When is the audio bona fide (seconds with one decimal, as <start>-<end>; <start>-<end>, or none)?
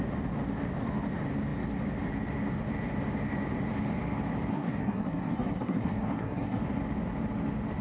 0.0-4.5; 6.6-7.8